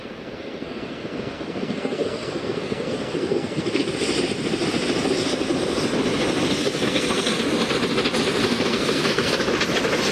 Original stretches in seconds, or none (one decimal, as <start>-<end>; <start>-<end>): 3.9-6.6; 7.4-8.4; 9.4-10.1